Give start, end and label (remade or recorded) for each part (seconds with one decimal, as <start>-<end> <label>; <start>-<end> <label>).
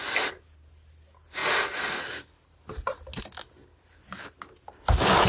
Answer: 0.0-5.3 recorded